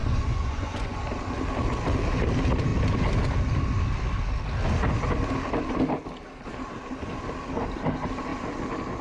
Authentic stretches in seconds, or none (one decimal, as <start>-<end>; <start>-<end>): 1.0-9.0

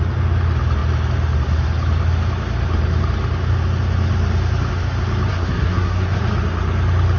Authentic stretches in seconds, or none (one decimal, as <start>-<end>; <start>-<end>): 0.0-5.3; 6.2-7.2

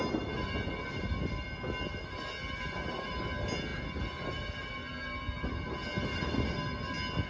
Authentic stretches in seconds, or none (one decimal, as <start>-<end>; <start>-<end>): 0.0-7.3

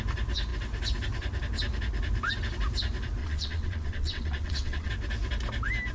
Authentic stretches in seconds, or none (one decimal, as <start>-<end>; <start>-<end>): 0.0-3.2; 4.9-5.9

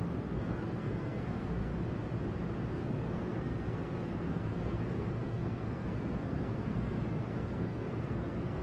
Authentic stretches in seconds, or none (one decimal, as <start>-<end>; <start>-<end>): 1.7-2.7

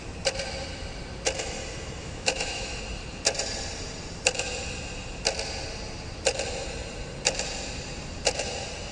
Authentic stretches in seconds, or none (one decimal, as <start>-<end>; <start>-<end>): 0.0-2.0; 2.8-8.9

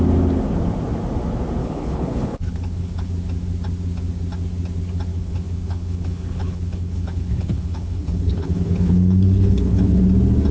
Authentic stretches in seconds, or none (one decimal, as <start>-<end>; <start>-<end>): 0.0-1.6; 3.1-5.1; 10.0-10.5

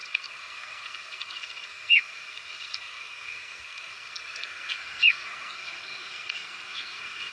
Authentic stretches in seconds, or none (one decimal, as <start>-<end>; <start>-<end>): none